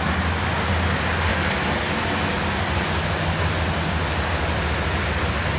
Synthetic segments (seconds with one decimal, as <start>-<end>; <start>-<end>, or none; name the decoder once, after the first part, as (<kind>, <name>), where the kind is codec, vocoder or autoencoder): none